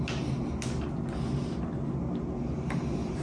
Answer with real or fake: real